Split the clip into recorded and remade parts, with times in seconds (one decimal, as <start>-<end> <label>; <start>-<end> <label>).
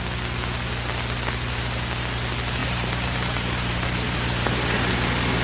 0.0-2.6 recorded; 2.6-4.9 remade; 4.9-5.4 recorded